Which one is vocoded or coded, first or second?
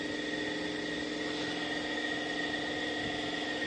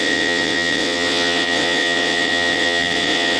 second